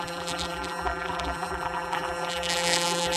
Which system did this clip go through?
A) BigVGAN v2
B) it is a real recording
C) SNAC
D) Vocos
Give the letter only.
A